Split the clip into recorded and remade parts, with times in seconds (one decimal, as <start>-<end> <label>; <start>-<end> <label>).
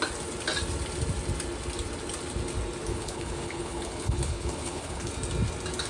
0.0-2.9 recorded; 2.9-5.1 remade; 5.1-5.9 recorded